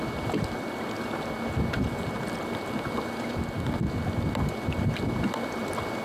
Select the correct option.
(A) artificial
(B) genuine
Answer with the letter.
B